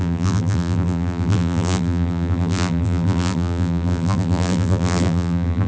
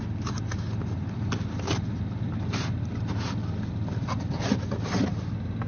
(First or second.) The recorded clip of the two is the second